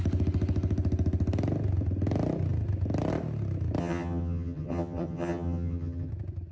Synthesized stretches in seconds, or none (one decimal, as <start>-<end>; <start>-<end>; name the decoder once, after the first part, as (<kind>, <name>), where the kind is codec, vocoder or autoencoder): 3.8-6.1 (vocoder, HiFi-GAN)